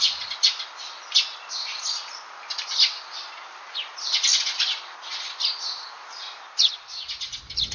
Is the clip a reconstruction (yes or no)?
no